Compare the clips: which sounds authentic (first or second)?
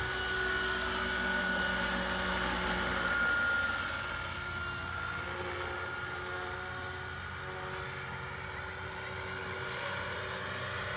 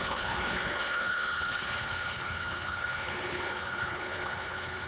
first